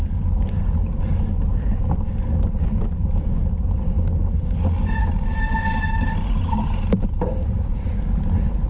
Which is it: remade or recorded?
recorded